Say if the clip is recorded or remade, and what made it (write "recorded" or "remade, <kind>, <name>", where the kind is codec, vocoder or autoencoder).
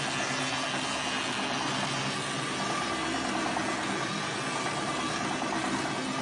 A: recorded